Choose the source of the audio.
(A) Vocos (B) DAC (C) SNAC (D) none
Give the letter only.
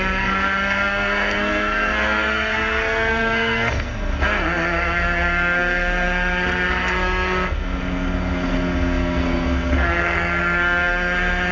C